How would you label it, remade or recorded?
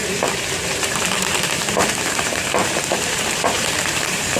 remade